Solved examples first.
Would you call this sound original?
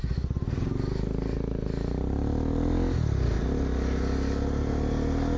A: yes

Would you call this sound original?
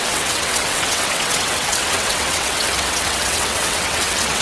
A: no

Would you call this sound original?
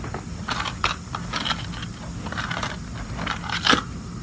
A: yes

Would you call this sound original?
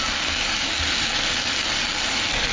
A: yes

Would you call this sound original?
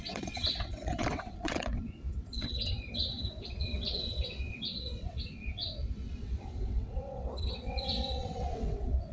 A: no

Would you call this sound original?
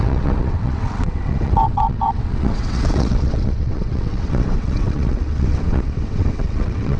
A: no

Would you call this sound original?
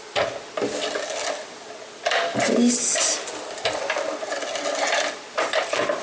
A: yes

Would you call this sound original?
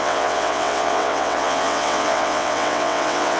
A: no